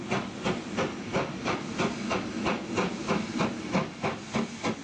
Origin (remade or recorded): recorded